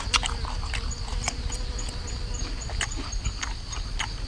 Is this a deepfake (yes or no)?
no